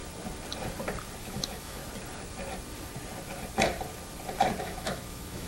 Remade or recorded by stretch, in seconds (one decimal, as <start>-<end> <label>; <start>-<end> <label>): 0.0-1.2 recorded; 1.2-1.8 remade; 1.8-4.6 recorded; 4.6-5.5 remade